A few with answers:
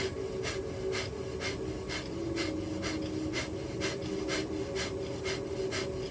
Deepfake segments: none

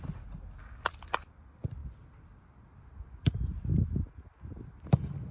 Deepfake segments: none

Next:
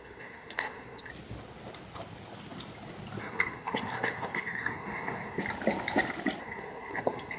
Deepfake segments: 0.0-1.1 (codec, SNAC); 3.2-5.4; 6.4-7.4

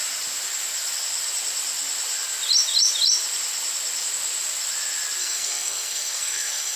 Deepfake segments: 5.2-6.8 (codec, SNAC)